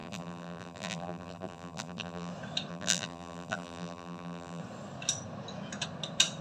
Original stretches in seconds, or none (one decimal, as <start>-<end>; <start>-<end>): 2.3-2.7; 4.6-6.4